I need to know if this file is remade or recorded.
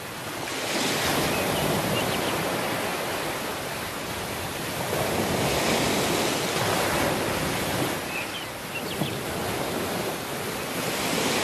recorded